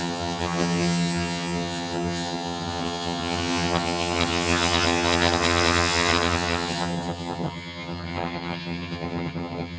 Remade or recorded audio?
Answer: remade